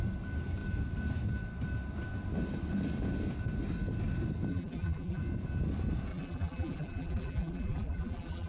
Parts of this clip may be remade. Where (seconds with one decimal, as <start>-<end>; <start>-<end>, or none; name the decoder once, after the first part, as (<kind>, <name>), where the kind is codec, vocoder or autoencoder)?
4.5-5.2 (vocoder, BigVGAN v2); 6.1-8.5